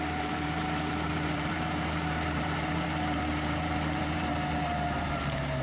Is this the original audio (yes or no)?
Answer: no